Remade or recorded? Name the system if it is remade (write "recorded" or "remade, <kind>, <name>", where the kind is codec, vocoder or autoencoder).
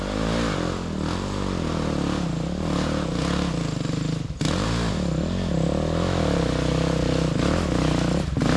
recorded